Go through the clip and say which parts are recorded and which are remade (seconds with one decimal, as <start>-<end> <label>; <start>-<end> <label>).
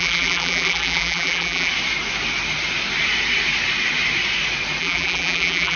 0.0-1.7 remade; 1.7-4.8 recorded; 4.8-5.8 remade